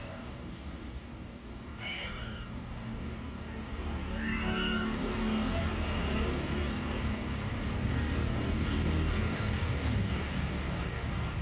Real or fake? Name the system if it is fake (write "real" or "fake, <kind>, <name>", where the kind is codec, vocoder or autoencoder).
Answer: fake, codec, DAC